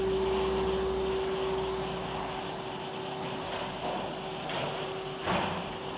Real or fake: real